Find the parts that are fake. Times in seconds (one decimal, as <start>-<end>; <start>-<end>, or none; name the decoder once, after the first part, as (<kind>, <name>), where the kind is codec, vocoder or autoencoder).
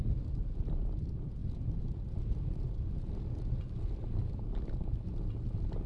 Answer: none